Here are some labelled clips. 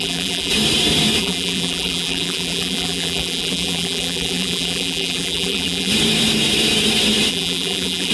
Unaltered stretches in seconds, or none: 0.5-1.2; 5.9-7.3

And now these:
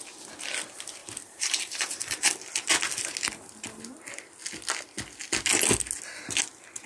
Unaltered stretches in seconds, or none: 0.0-1.0; 2.3-6.9

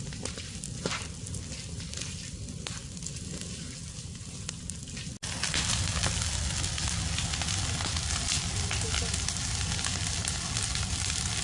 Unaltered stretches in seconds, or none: 0.0-11.4